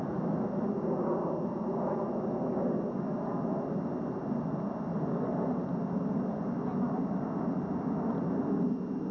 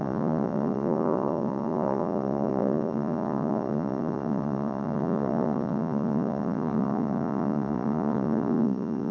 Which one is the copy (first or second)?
second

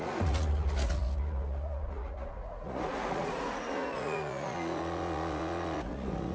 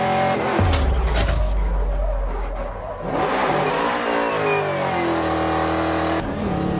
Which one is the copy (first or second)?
first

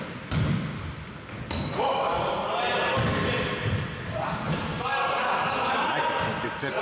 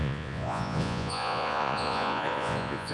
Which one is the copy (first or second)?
second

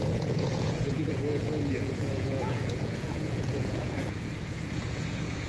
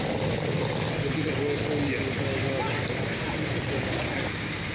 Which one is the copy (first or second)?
first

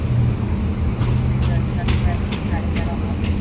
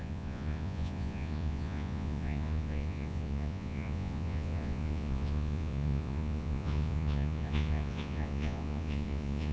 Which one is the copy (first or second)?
second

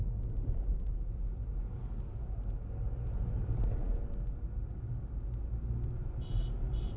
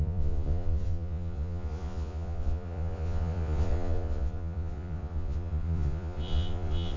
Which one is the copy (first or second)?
second